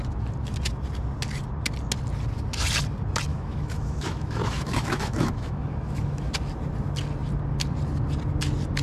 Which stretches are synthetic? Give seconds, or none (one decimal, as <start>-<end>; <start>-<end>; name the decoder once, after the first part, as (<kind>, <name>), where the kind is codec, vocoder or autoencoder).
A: 3.3-6.3 (autoencoder, DAC-VAE)